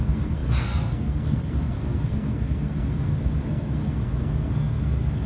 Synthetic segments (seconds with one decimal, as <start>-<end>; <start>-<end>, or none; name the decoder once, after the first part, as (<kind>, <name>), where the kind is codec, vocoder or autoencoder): 0.0-5.3 (codec, SNAC)